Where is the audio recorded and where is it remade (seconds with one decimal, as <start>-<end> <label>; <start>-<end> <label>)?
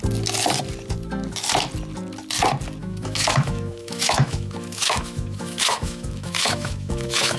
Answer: 0.0-2.8 recorded; 2.8-7.4 remade